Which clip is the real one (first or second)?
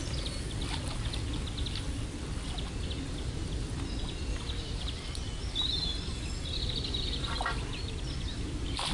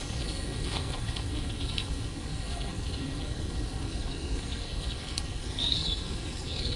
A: first